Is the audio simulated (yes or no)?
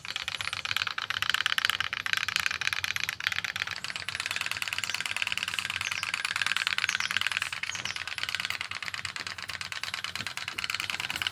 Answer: no